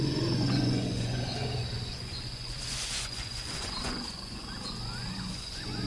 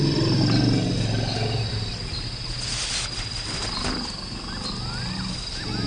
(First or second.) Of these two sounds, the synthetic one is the first